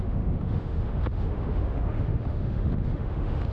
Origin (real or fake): fake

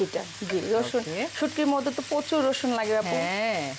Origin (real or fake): real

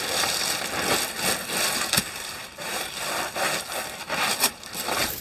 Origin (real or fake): real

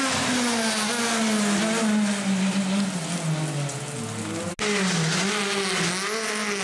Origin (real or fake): real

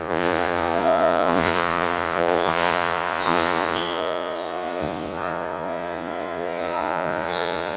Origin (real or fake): fake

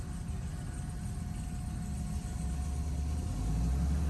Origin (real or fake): real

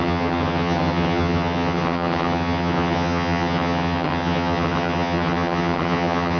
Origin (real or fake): fake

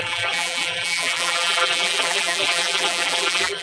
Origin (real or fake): fake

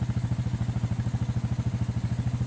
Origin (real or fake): real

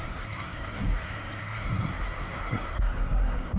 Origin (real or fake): fake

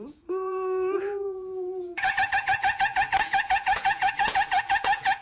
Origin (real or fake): fake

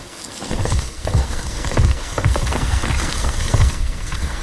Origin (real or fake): fake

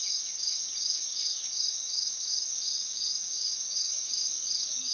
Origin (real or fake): fake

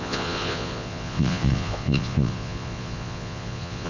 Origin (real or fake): fake